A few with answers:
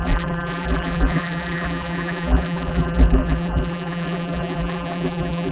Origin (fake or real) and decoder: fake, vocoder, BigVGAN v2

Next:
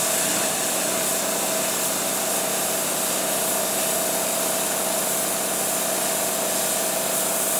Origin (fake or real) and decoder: real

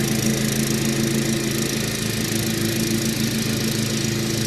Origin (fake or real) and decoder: real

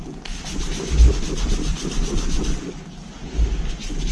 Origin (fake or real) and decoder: real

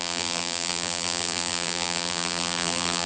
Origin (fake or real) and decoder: fake, vocoder, BigVGAN v2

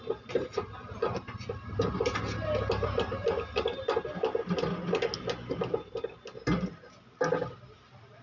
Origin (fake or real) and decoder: real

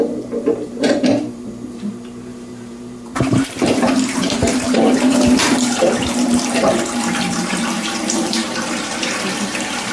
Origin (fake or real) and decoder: fake, vocoder, BigVGAN v2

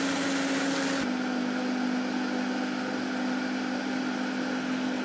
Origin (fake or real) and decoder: real